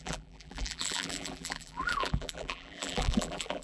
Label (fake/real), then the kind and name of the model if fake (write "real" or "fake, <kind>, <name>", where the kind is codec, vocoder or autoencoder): fake, vocoder, BigVGAN v2